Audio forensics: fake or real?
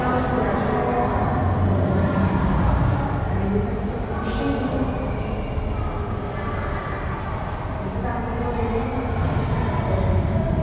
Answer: real